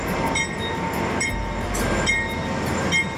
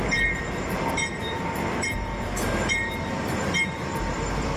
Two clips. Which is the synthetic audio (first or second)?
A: second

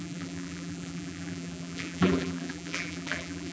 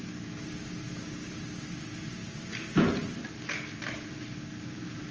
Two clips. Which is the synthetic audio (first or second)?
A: first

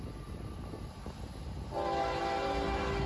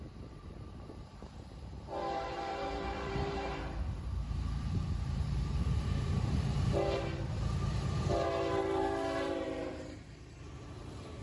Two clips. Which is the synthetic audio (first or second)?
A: second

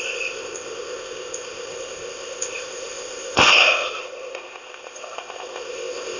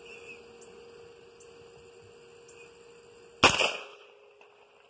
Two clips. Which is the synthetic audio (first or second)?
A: first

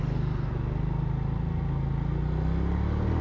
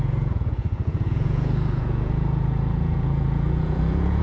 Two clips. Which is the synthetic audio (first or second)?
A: second